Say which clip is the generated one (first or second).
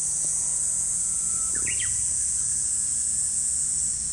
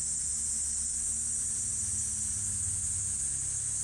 first